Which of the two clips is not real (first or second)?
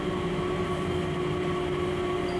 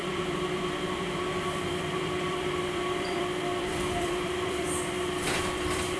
second